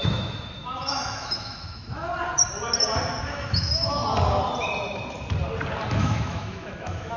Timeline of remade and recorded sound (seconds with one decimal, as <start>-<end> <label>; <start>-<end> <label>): 0.0-2.1 remade; 2.1-3.2 recorded; 3.2-4.0 remade; 4.0-5.9 recorded; 5.9-7.2 remade